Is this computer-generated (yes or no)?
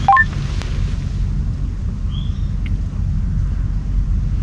no